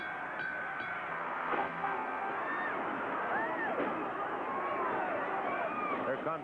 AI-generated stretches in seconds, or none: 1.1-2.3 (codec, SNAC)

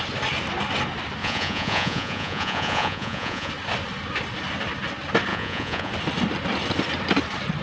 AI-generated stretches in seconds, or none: 1.2-3.5 (vocoder, Vocos); 5.3-5.9

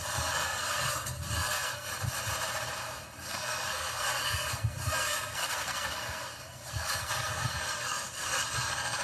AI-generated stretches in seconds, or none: 0.0-1.9 (codec, SNAC); 3.3-9.0

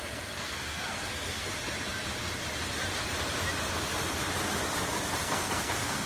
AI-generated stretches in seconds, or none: 0.0-1.5 (codec, SNAC); 5.2-6.1

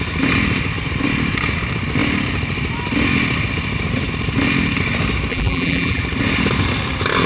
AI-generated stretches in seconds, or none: 5.3-6.0 (vocoder, BigVGAN v2)

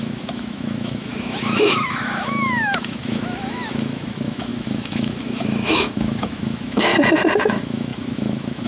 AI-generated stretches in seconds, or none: 0.0-6.9 (autoencoder, DAC-VAE); 7.4-8.7

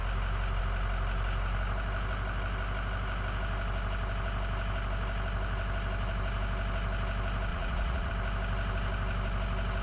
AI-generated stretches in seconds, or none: 7.5-8.1 (vocoder, Vocos)